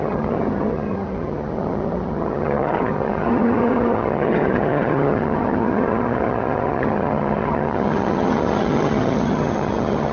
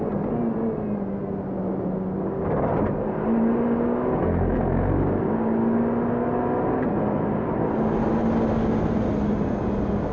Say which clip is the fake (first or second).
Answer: first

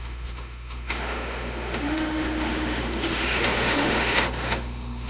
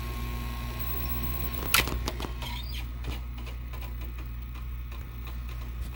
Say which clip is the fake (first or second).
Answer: first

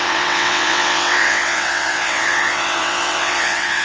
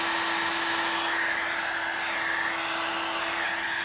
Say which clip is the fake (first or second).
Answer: first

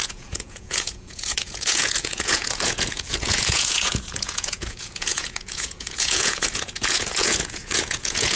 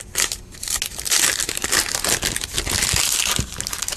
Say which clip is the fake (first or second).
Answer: first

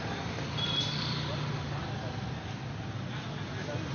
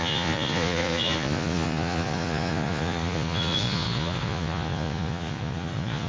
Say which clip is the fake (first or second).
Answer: second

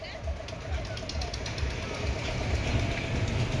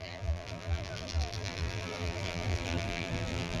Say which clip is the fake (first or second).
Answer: second